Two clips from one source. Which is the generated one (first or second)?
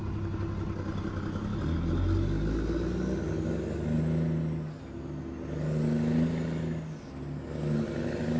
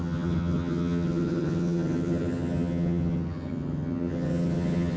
second